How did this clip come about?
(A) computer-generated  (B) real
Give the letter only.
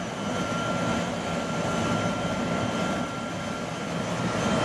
B